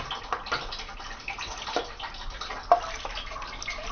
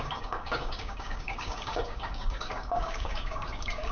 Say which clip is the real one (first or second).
first